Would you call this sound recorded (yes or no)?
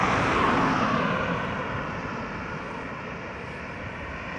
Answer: yes